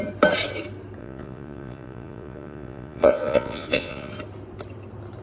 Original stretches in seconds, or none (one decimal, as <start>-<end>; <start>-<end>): 0.0-1.0; 4.1-5.2